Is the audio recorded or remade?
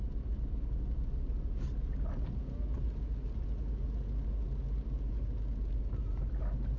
recorded